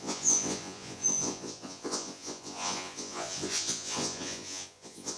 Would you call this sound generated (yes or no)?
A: yes